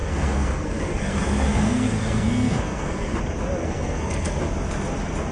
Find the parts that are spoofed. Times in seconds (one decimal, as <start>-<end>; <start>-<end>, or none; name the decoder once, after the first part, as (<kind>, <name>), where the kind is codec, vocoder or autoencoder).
0.0-3.2 (codec, SNAC); 3.6-4.4